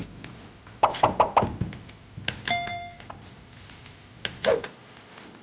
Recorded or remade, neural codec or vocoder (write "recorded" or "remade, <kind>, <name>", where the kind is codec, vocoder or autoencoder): recorded